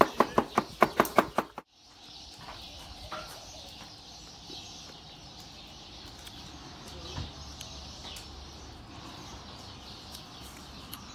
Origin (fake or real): real